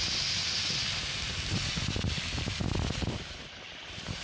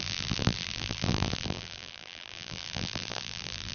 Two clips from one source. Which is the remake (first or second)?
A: second